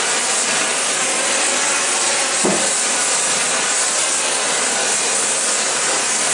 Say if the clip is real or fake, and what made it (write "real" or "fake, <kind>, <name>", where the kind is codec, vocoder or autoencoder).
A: real